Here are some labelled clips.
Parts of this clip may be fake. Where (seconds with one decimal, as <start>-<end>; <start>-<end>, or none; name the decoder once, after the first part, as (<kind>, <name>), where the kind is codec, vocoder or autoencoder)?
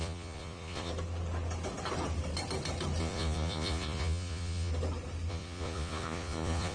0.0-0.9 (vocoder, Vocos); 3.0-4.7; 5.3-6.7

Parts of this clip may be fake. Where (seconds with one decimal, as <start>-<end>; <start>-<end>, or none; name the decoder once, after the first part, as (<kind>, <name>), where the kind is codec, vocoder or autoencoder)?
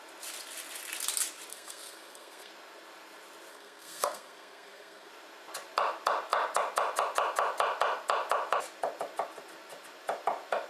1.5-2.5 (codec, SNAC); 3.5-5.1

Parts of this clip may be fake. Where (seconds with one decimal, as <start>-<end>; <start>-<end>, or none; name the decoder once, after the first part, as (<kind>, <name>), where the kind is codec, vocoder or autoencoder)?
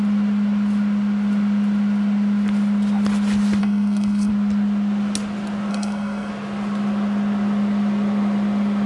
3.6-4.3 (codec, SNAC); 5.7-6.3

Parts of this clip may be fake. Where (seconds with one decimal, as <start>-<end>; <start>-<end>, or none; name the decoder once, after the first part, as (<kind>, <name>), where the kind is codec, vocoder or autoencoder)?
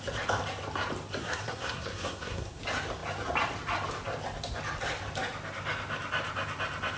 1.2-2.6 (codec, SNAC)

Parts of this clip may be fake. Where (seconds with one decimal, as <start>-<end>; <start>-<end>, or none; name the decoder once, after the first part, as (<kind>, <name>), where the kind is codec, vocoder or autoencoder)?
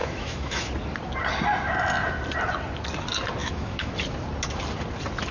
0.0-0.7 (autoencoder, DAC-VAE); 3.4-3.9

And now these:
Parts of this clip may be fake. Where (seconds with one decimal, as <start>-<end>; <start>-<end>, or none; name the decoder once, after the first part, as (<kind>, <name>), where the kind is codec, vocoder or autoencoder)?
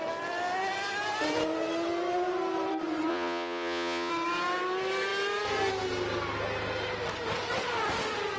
3.1-4.1 (vocoder, Vocos)